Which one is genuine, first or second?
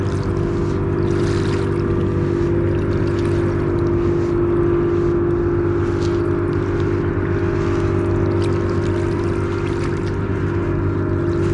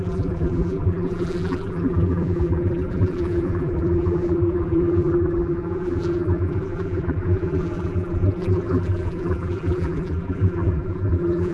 first